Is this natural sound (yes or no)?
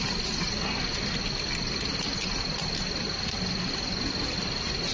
yes